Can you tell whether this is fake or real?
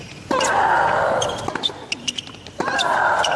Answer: real